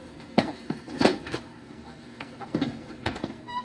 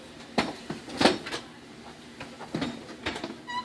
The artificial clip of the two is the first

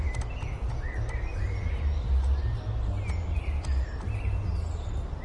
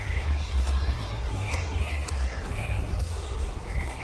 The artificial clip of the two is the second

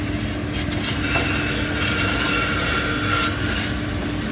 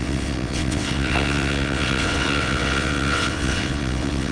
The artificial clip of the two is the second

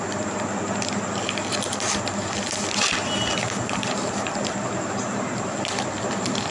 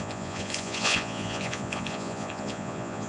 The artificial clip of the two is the second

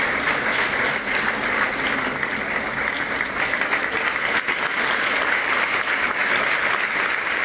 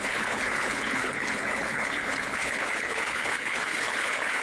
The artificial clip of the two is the second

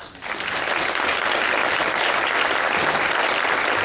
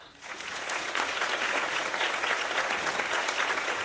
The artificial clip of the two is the second